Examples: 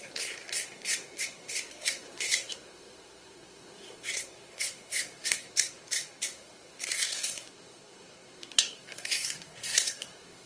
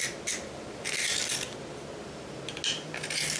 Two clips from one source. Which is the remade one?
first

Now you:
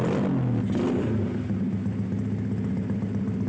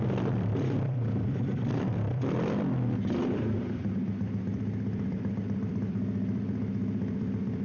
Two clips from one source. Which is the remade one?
second